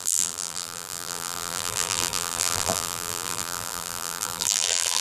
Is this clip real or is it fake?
fake